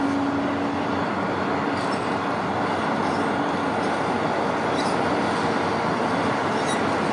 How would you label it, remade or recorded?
recorded